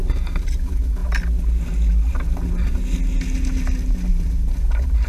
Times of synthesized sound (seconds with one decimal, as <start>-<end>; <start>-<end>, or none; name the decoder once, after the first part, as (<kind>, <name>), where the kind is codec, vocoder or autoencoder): none